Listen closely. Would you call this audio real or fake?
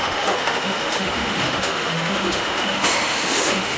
fake